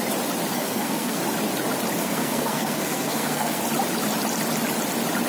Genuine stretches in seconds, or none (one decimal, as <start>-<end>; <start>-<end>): 0.0-0.5; 1.2-2.0; 3.6-5.3